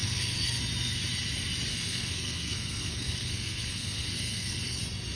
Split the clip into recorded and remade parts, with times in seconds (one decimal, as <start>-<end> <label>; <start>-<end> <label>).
0.0-0.6 remade; 0.6-1.7 recorded; 1.7-4.8 remade; 4.8-5.2 recorded